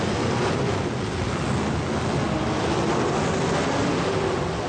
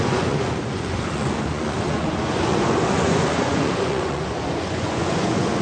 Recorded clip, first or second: first